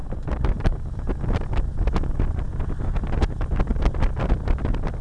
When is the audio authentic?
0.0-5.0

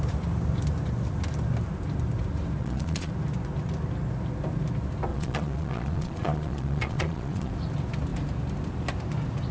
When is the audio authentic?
0.0-2.6; 3.1-5.1; 7.5-9.5

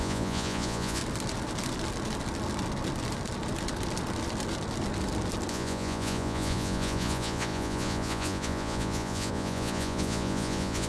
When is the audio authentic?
1.0-5.5

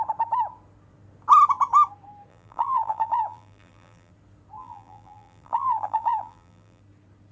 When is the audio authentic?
0.0-2.3; 4.1-4.6; 6.8-7.3